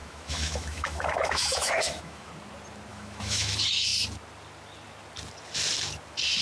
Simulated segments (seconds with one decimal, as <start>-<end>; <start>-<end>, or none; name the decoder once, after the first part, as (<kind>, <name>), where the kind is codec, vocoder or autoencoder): 0.0-2.3 (autoencoder, DAC-VAE); 2.9-3.5